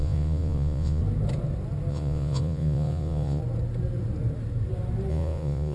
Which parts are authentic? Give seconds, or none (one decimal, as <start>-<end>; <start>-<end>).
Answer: 1.0-1.9; 3.4-5.1